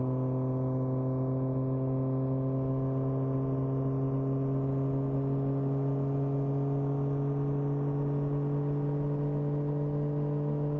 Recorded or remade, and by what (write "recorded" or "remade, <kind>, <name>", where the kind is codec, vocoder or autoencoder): recorded